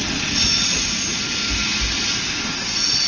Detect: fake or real real